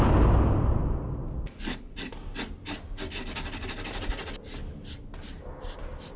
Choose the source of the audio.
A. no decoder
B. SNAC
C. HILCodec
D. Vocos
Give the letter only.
A